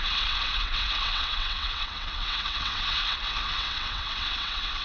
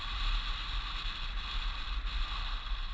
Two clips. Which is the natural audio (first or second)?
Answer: second